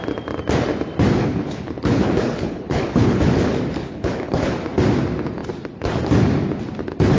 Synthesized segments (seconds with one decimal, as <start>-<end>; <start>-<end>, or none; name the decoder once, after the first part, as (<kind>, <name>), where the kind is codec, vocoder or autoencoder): 1.2-3.3 (codec, HILCodec); 3.8-4.5